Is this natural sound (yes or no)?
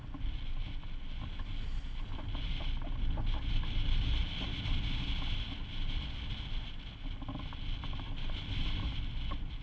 yes